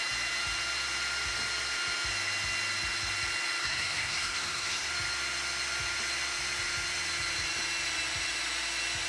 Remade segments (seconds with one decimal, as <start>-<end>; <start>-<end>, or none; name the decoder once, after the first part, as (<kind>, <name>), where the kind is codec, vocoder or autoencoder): 3.6-4.9 (codec, SNAC)